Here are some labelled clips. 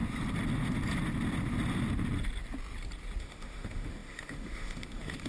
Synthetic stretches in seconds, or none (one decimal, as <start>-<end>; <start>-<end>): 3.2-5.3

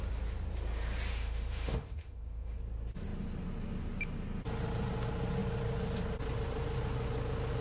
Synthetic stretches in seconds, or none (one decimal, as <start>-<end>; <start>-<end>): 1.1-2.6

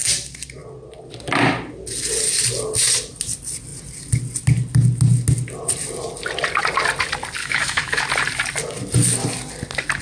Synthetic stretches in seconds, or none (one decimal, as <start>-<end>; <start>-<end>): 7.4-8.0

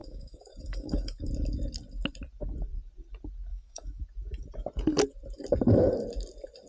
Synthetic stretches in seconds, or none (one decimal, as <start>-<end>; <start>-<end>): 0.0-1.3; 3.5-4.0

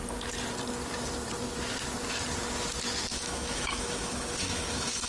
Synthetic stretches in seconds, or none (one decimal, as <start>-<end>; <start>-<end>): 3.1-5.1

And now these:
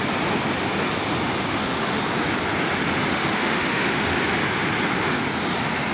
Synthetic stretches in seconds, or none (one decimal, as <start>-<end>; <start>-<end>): 1.5-2.0; 3.1-4.2